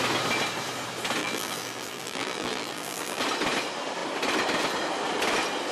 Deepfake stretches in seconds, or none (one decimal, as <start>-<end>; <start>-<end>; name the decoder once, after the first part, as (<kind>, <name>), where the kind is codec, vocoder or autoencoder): 1.2-3.2 (vocoder, BigVGAN v2)